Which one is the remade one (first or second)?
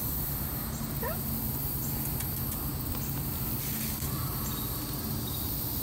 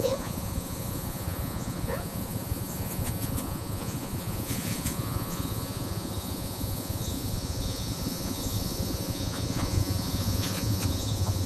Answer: second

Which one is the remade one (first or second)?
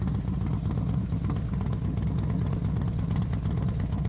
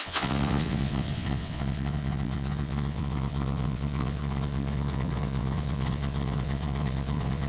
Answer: second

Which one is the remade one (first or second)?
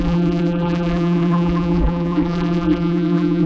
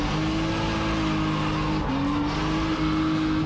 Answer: first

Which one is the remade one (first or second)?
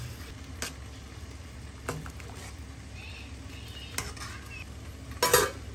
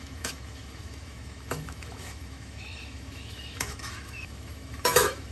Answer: second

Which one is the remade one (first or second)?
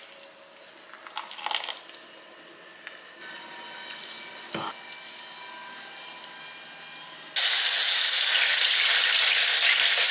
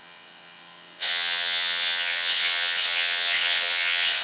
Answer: second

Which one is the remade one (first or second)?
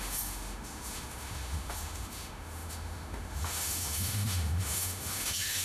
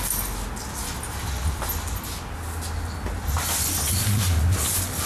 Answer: first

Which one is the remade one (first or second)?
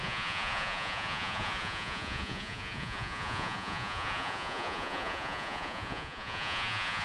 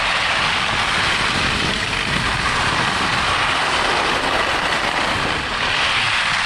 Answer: first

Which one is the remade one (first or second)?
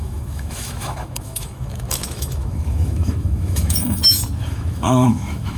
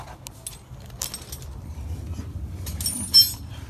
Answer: first